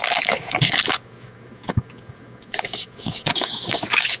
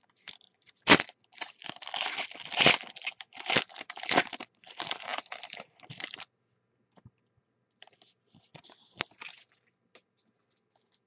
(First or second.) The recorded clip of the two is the second